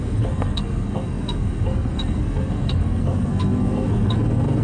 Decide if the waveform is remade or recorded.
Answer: remade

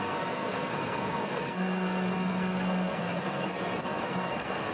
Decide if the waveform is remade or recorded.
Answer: remade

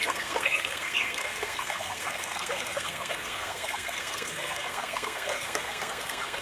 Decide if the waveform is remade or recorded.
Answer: remade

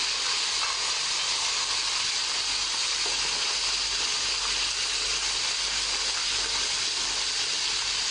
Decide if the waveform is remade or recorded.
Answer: recorded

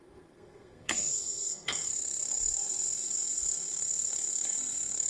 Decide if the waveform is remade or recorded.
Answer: remade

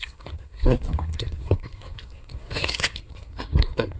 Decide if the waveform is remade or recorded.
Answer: remade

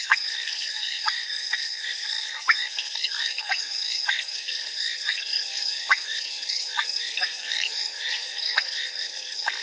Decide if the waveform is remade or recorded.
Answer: remade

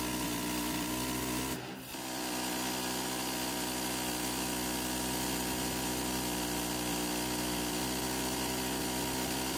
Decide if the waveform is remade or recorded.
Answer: recorded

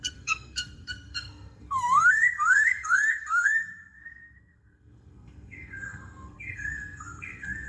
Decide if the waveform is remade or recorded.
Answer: remade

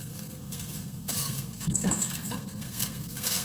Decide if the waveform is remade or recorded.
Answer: remade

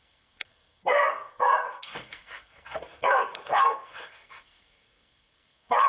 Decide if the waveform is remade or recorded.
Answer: remade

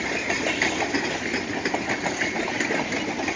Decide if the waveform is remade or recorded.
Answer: recorded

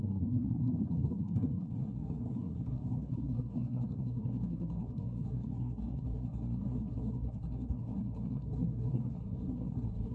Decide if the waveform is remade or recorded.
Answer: remade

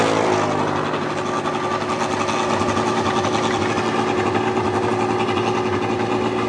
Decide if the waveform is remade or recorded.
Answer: recorded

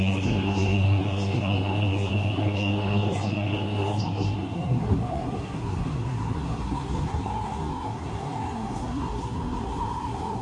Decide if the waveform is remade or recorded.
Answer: remade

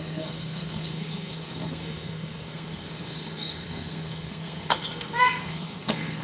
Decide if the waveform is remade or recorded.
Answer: remade